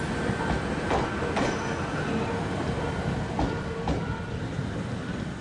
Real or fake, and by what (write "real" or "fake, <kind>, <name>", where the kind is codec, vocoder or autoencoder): fake, vocoder, BigVGAN v2